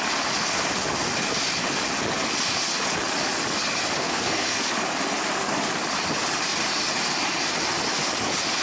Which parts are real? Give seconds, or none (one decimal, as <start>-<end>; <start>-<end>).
0.0-4.0; 4.6-8.6